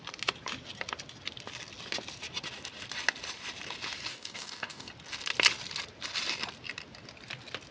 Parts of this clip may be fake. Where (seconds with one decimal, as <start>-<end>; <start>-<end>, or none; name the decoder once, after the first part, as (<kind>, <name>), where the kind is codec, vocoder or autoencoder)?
4.1-4.9 (codec, DAC)